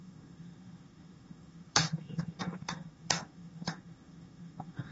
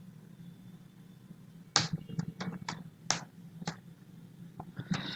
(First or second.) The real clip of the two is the second